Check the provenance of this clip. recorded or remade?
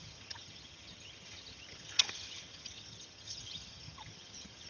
remade